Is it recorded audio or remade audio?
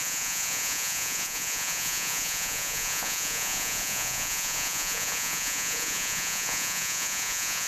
remade